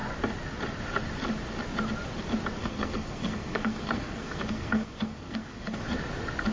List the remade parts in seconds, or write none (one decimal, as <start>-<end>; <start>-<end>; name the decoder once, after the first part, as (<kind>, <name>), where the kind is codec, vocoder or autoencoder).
2.6-5.8 (codec, SNAC)